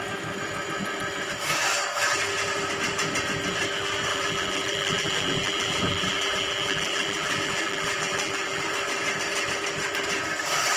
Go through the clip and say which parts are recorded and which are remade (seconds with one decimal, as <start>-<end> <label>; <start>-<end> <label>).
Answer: 0.0-4.1 recorded; 4.1-8.6 remade; 8.6-10.8 recorded